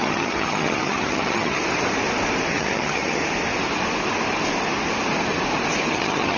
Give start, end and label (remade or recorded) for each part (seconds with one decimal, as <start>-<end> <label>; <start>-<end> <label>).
0.0-1.6 remade; 1.6-2.5 recorded; 2.5-3.2 remade; 3.2-5.9 recorded; 5.9-6.4 remade